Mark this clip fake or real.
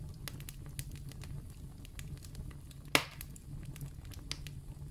real